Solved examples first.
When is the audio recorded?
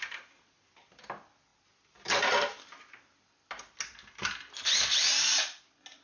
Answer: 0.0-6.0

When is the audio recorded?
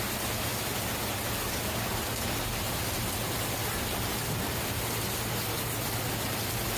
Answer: 0.0-6.8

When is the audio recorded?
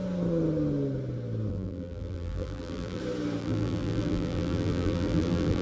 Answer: 0.0-1.5; 3.0-3.4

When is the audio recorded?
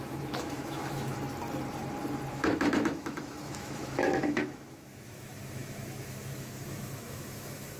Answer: 1.1-2.3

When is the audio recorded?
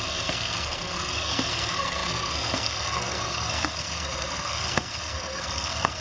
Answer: none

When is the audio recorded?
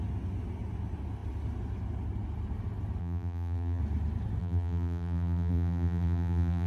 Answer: 0.0-3.0; 3.8-4.4